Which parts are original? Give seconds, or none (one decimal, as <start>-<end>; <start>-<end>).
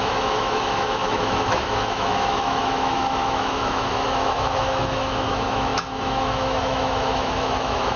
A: none